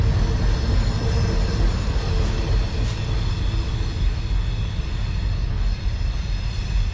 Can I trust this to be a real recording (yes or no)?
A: yes